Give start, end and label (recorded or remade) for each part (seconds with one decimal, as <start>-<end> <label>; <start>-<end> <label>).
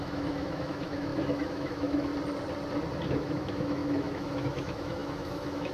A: 0.0-2.1 remade; 2.1-3.1 recorded; 3.1-5.7 remade